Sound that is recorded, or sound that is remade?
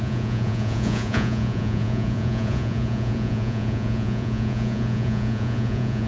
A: remade